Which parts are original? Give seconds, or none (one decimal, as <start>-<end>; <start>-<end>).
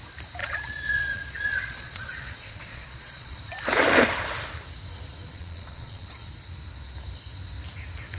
0.0-0.4; 3.4-5.3; 6.3-8.2